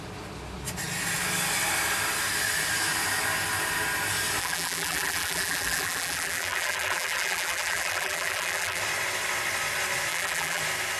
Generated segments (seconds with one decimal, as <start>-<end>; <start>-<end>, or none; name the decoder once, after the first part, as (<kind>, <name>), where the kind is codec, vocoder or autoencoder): 4.4-8.8 (vocoder, BigVGAN v2); 10.1-10.6